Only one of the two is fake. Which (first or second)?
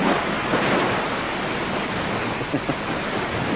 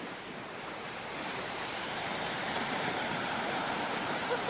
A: second